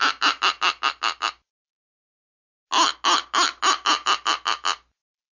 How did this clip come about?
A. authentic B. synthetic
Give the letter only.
A